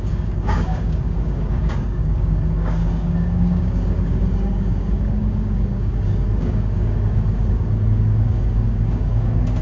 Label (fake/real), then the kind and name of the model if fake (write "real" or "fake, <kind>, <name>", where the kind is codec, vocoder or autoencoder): fake, codec, DAC